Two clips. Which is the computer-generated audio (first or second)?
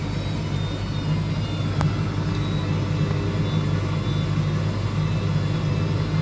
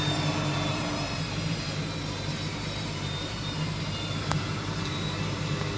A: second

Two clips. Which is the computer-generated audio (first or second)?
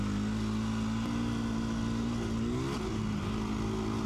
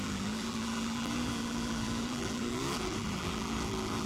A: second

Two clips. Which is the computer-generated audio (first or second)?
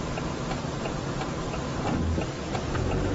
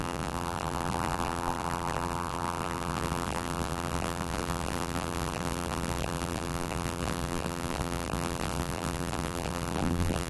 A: second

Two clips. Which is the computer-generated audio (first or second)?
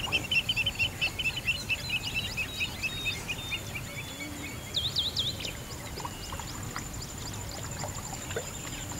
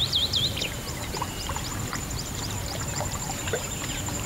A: second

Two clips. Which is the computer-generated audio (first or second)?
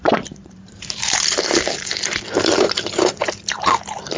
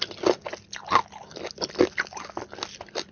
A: first